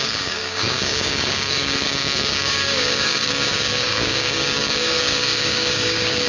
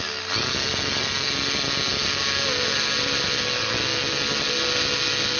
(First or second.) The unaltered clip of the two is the second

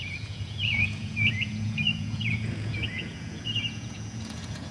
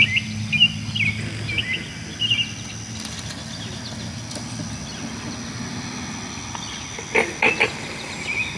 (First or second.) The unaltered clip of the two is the second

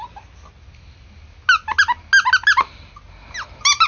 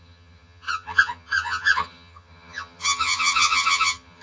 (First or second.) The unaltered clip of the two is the first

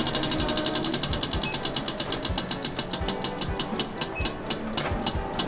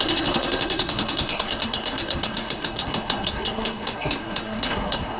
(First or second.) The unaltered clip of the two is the first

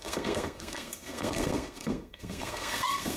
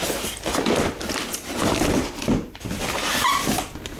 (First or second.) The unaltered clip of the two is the second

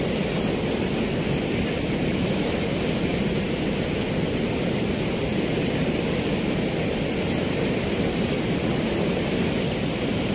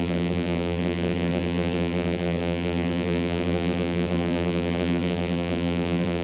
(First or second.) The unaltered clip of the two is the first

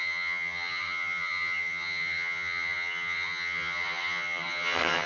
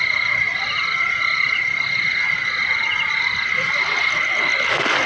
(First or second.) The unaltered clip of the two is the second